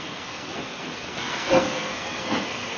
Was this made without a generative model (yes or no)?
no